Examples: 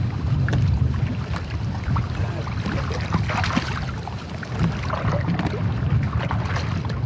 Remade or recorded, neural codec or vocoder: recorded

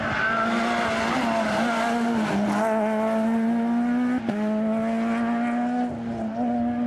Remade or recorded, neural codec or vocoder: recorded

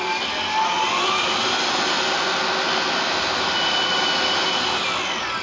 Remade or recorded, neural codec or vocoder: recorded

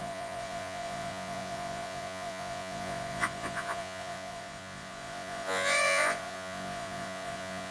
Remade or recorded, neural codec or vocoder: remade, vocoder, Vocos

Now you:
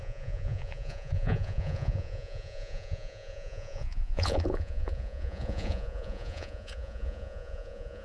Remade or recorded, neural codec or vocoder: remade, vocoder, Vocos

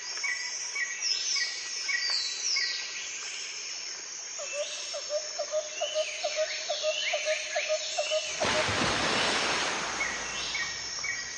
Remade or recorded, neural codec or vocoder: recorded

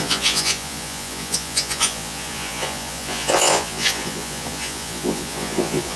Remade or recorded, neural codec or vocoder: remade, vocoder, Vocos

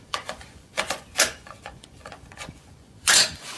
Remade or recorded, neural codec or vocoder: remade, vocoder, Vocos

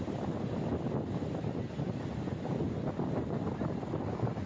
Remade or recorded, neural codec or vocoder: recorded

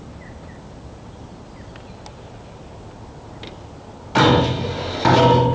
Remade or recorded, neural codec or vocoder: recorded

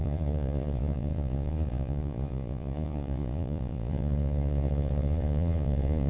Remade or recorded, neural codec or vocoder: remade, vocoder, Vocos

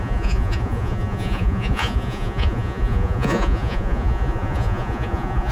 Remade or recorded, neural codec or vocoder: remade, vocoder, Vocos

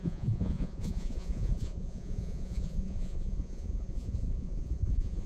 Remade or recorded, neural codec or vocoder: remade, vocoder, Vocos